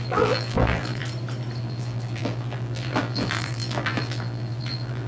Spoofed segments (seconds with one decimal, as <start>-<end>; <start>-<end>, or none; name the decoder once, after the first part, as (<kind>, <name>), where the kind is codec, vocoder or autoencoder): 0.0-1.0 (vocoder, BigVGAN v2); 1.6-5.1